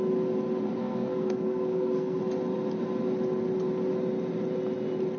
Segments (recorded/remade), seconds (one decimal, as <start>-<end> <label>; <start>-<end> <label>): 0.0-0.7 recorded; 0.7-2.2 remade; 2.2-5.2 recorded